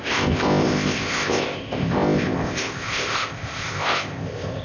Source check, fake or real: fake